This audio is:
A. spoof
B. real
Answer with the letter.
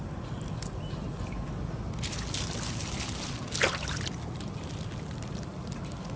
B